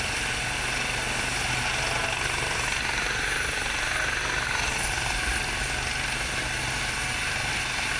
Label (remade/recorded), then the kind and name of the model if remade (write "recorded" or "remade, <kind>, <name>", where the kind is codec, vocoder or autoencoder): recorded